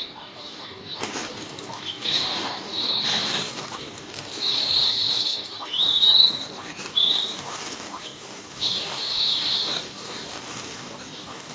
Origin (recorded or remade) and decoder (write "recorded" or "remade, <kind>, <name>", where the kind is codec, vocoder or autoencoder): remade, codec, DAC